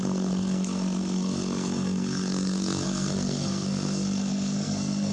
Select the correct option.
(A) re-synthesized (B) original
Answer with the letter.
A